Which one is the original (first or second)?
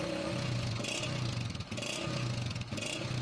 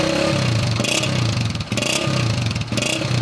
second